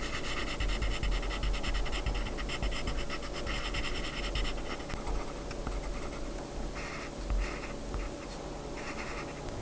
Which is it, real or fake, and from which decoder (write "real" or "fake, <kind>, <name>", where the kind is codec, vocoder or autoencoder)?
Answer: real